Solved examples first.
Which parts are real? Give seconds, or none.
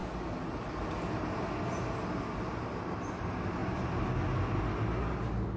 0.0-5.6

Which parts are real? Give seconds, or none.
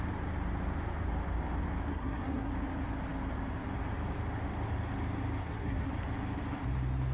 0.0-1.9; 2.5-5.4; 5.9-7.1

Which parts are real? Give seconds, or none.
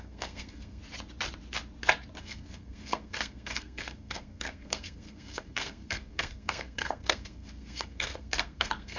0.8-2.2